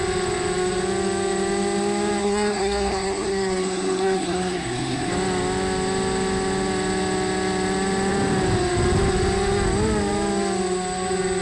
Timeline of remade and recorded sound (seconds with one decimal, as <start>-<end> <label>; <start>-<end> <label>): 0.0-2.2 recorded; 2.2-5.1 remade; 5.1-11.4 recorded